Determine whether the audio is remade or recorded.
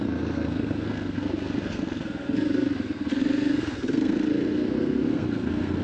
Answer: remade